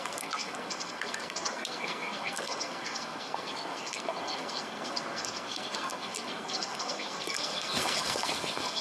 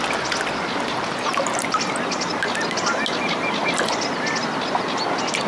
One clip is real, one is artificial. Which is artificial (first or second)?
first